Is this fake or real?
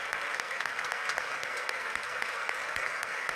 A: fake